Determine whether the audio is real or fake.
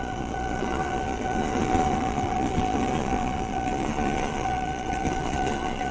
fake